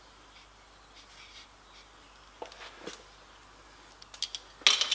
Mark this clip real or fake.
real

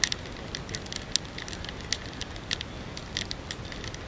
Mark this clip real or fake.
real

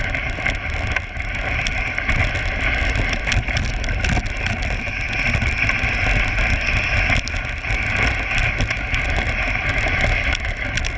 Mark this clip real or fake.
real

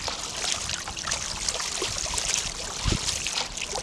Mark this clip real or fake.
real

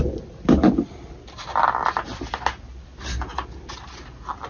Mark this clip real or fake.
real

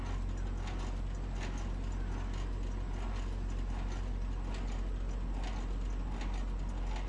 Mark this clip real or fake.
real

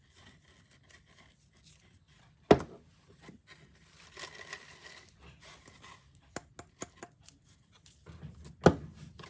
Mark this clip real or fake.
real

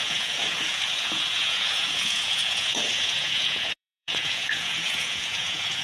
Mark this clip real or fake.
fake